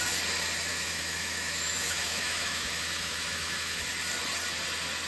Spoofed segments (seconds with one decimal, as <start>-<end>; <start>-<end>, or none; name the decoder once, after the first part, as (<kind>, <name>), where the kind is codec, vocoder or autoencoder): 0.7-3.8 (autoencoder, DAC-VAE)